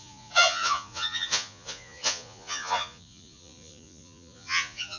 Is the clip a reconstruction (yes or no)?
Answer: yes